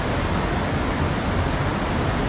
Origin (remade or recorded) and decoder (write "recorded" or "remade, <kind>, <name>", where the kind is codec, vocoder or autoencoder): recorded